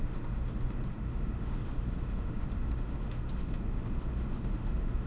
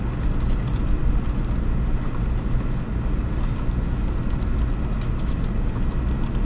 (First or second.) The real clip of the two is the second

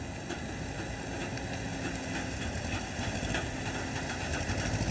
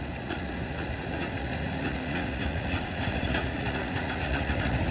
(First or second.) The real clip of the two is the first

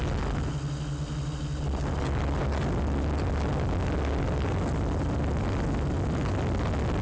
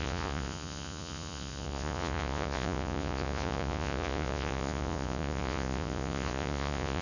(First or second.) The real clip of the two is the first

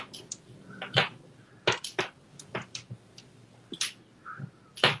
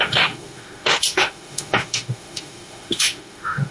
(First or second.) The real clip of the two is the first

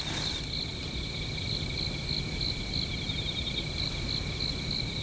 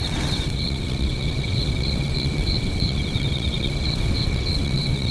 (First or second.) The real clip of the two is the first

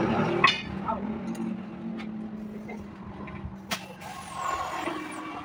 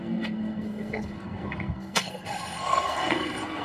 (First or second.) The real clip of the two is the first